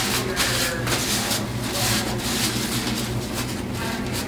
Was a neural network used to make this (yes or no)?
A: no